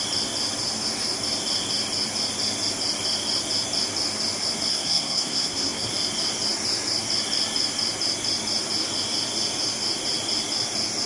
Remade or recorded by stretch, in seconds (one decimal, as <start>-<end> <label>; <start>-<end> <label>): 0.0-4.7 recorded; 4.7-5.9 remade; 5.9-11.1 recorded